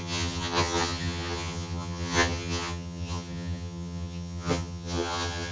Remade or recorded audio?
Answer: remade